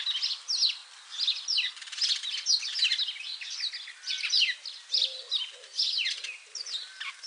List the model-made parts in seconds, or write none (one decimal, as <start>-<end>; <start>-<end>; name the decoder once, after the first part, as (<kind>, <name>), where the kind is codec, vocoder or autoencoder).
none